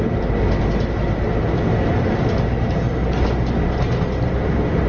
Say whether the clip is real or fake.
real